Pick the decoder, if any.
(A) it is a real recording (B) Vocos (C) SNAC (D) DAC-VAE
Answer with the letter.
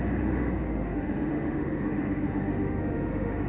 D